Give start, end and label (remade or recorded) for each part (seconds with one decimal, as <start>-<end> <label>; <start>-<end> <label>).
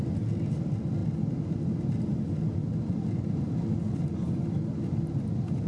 0.0-1.0 recorded; 1.0-1.5 remade; 1.5-2.1 recorded; 2.1-5.7 remade